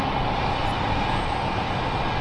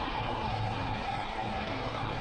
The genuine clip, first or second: first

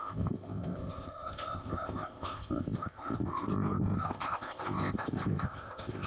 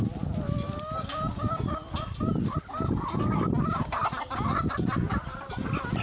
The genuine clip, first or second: second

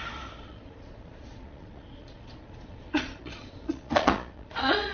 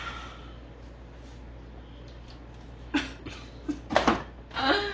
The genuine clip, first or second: second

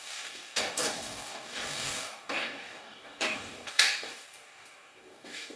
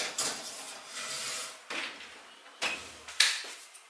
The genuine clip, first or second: second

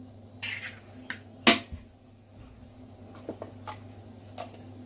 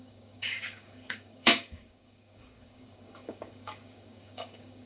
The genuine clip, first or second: first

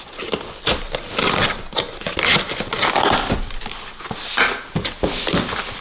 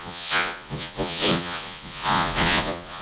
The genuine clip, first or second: first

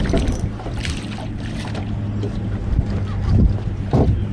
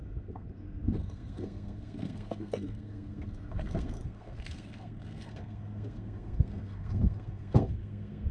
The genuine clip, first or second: first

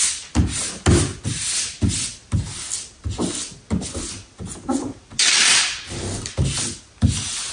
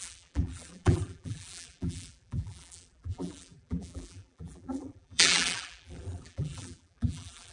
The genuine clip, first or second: first